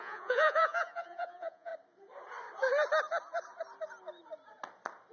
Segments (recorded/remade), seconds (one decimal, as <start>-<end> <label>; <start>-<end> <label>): 0.0-1.7 remade; 1.7-5.1 recorded